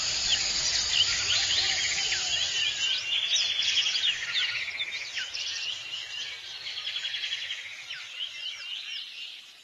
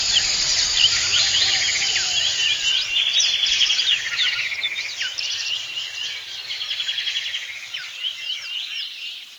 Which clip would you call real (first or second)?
first